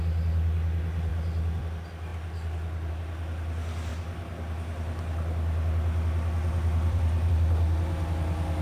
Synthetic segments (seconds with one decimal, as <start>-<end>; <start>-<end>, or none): 1.1-1.6; 2.1-2.9; 3.9-7.3